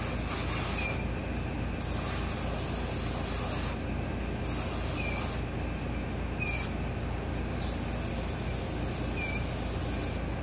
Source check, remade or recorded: recorded